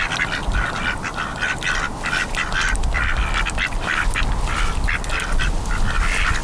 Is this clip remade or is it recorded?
recorded